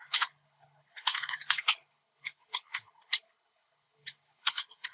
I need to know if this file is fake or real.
fake